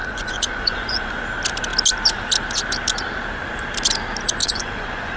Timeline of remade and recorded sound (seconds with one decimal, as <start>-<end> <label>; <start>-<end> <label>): 0.0-1.2 remade; 1.2-4.4 recorded; 4.4-5.2 remade